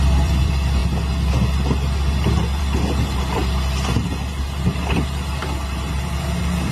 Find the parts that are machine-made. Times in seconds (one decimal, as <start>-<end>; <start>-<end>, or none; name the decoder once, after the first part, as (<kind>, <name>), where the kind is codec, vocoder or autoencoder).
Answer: 0.0-0.8 (vocoder, BigVGAN v2); 2.6-3.4; 4.3-5.4; 5.9-6.7